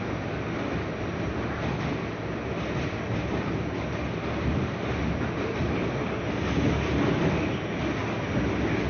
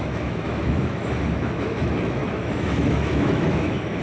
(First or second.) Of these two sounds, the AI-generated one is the second